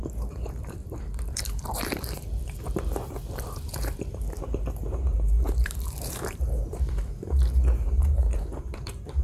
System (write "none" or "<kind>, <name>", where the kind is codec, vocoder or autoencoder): vocoder, BigVGAN v2